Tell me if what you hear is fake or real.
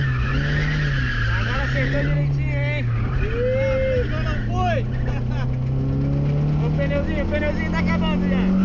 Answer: real